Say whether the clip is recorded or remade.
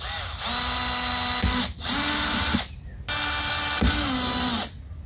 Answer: recorded